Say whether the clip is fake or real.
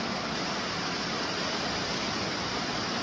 real